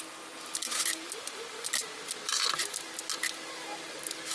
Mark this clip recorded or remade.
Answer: recorded